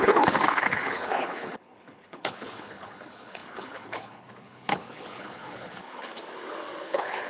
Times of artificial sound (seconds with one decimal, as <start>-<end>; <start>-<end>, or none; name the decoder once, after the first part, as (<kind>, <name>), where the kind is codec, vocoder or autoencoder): 0.0-6.1 (codec, HILCodec); 6.8-7.3